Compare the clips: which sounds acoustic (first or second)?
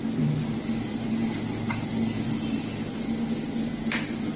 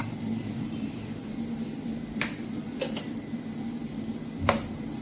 first